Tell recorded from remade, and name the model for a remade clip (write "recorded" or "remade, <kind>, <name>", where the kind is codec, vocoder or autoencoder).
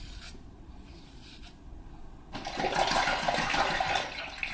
recorded